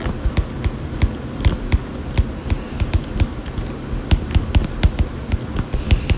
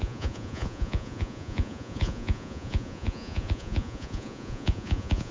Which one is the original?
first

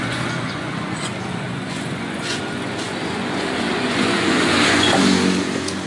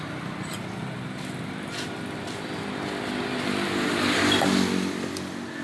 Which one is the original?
second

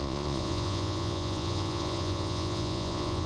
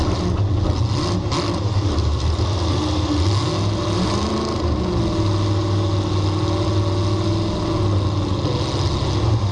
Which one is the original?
second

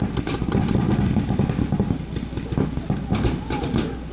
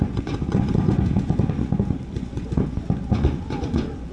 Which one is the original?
first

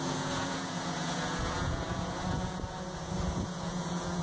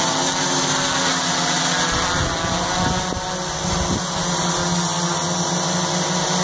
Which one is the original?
second